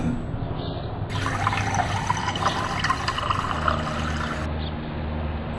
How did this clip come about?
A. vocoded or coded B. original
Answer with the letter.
B